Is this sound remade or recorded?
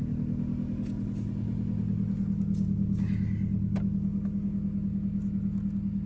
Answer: recorded